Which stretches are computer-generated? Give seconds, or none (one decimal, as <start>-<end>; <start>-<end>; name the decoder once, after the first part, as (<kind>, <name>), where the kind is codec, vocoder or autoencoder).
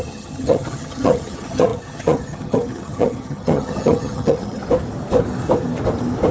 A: 0.0-4.6 (vocoder, HiFi-GAN)